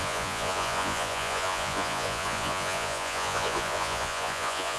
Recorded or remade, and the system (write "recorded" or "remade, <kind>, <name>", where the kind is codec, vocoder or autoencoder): remade, vocoder, Vocos